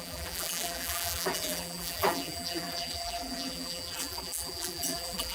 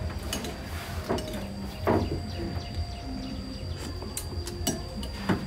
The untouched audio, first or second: second